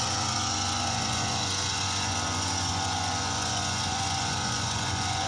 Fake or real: fake